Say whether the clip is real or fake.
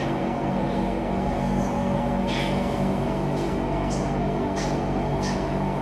fake